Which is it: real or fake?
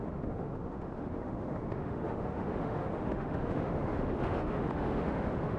fake